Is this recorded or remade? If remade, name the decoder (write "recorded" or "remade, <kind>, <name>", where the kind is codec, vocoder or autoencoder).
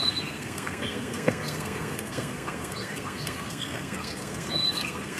remade, codec, SNAC